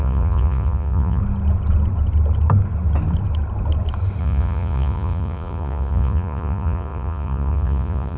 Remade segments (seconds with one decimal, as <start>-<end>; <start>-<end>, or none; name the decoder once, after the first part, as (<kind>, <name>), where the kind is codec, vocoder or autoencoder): 0.0-1.2 (vocoder, Vocos); 4.2-8.2